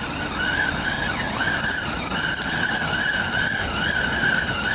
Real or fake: real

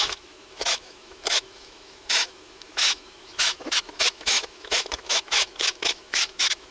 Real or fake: fake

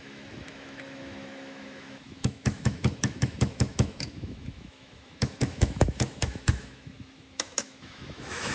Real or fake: fake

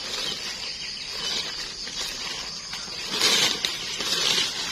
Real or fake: real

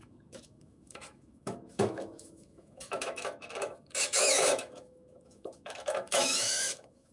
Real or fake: fake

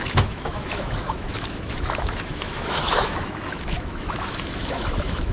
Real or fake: fake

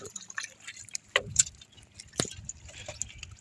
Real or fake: real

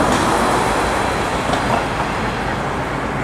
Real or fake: real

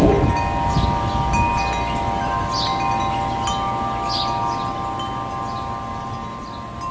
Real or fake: real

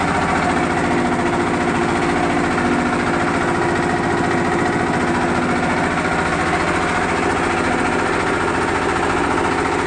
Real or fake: real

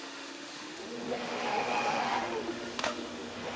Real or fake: fake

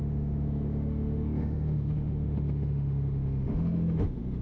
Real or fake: fake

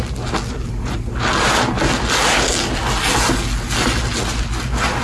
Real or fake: real